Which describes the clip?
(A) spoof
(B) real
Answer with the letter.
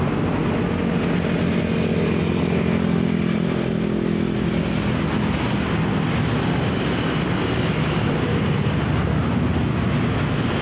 B